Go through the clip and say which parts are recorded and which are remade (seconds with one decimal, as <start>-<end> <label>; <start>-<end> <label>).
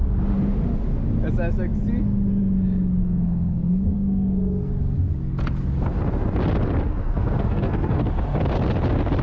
0.0-3.0 recorded; 3.0-4.7 remade; 4.7-7.0 recorded; 7.0-8.0 remade; 8.0-9.2 recorded